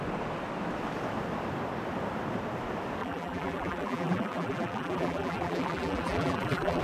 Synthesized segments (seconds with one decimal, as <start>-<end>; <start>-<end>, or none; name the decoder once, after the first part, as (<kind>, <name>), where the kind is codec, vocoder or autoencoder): 3.0-6.8 (vocoder, BigVGAN v2)